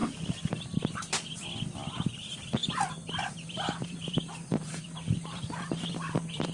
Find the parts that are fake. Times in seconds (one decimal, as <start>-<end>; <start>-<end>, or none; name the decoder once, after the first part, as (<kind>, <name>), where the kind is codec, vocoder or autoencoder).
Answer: 2.2-6.5 (vocoder, BigVGAN v2)